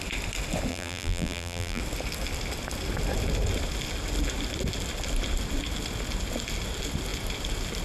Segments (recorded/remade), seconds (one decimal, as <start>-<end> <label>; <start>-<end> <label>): 0.0-0.7 recorded; 0.7-1.8 remade; 1.8-7.8 recorded